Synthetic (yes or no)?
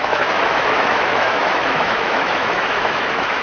yes